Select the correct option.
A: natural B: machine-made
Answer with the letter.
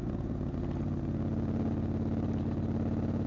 A